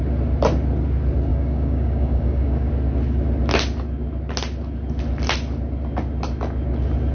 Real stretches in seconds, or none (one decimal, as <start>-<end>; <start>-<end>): 0.0-1.3; 2.7-7.1

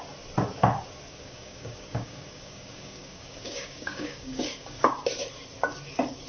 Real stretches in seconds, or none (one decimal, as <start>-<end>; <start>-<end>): 0.0-1.1; 4.9-6.3

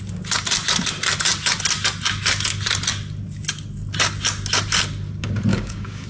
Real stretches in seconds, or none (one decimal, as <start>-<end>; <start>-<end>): 0.0-5.5

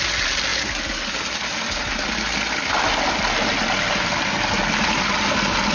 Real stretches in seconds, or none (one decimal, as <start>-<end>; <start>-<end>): 0.0-5.7

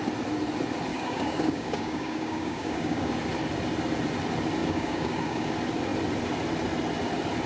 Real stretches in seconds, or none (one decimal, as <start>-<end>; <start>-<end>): 0.0-0.9; 3.1-4.6; 5.5-7.5

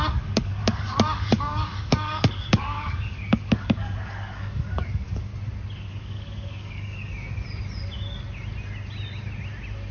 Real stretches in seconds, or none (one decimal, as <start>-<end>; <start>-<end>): 5.3-5.9; 7.1-9.9